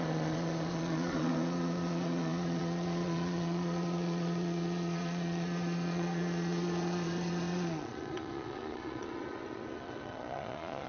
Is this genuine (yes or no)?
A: no